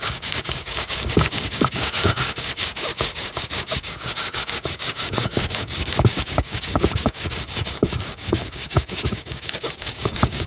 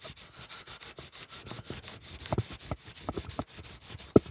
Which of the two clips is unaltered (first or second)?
second